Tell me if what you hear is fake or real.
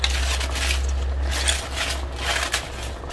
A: real